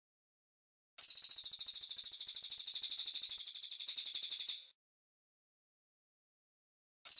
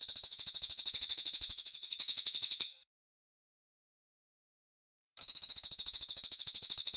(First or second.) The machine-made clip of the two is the second